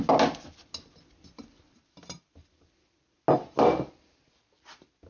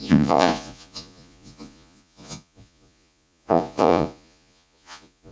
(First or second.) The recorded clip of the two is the first